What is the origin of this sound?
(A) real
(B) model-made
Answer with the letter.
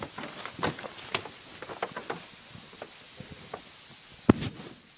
A